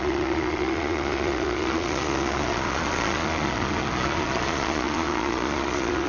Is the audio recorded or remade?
remade